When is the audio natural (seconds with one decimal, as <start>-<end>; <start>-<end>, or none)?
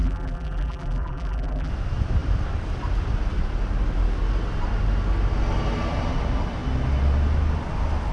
1.7-8.1